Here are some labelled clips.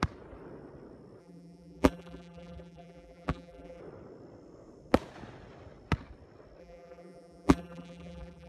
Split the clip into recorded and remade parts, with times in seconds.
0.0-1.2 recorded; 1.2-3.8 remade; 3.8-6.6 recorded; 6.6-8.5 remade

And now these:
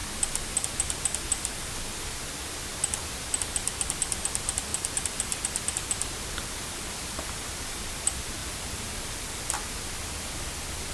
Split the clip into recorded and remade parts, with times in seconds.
0.0-4.7 recorded; 4.7-7.8 remade; 7.8-8.4 recorded; 8.4-9.9 remade; 9.9-10.9 recorded

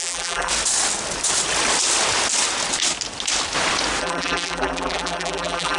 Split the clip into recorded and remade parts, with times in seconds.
0.0-0.5 remade; 0.5-4.0 recorded; 4.0-5.8 remade

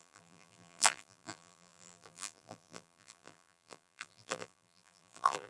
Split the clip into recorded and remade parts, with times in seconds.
0.0-5.5 remade

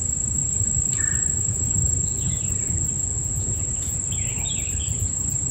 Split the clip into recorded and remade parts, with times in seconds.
0.0-0.4 recorded; 0.4-1.7 remade; 1.7-3.3 recorded; 3.3-5.5 remade

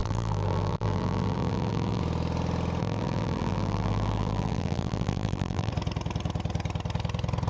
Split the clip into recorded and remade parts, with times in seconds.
0.0-2.0 remade; 2.0-2.8 recorded; 2.8-5.7 remade; 5.7-7.5 recorded

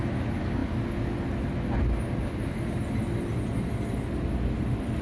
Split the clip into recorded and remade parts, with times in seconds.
0.0-5.0 recorded